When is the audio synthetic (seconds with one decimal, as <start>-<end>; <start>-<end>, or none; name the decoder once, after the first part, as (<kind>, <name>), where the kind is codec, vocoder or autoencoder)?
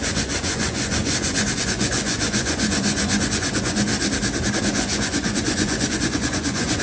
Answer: 0.0-3.9 (vocoder, Vocos); 4.6-6.8